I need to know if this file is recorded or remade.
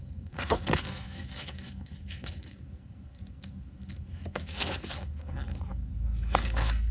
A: remade